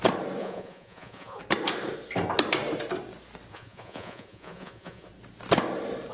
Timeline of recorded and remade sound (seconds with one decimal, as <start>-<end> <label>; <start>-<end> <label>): 0.0-0.4 recorded; 0.4-1.4 remade; 1.4-3.5 recorded; 3.5-5.1 remade; 5.1-6.1 recorded